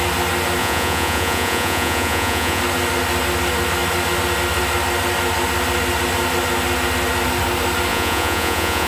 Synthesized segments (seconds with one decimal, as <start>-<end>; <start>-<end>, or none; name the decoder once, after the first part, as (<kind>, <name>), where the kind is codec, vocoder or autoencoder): 0.6-2.6 (vocoder, Vocos); 7.9-8.9